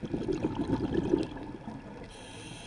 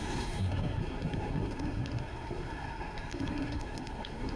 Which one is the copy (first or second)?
second